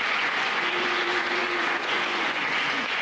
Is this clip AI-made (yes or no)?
yes